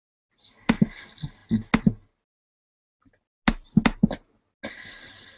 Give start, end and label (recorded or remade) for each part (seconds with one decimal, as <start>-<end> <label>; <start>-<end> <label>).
0.0-5.4 recorded